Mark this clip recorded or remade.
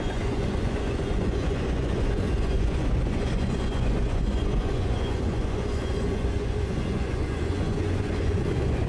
remade